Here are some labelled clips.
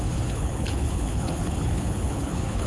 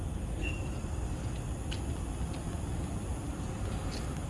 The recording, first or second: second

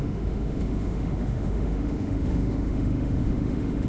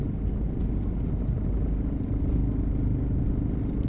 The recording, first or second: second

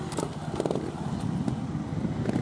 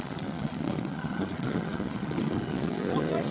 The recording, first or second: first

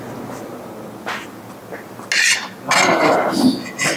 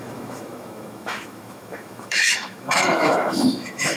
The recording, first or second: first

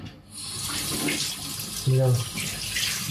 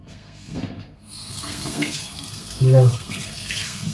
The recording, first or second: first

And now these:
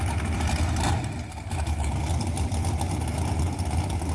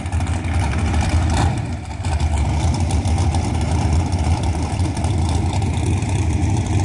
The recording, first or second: first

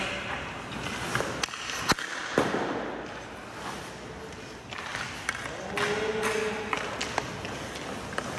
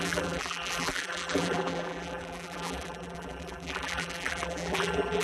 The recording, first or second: first